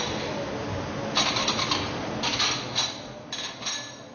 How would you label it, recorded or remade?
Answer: recorded